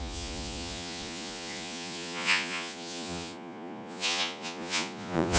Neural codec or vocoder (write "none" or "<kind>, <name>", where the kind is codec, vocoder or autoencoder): vocoder, Vocos